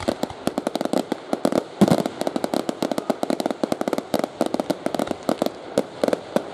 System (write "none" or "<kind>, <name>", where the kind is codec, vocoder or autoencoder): vocoder, BigVGAN v2